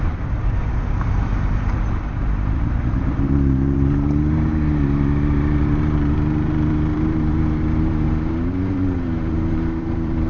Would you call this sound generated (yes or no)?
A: yes